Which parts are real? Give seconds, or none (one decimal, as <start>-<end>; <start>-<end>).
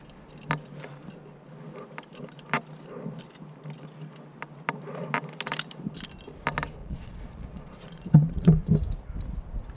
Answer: 0.0-6.8; 8.7-9.8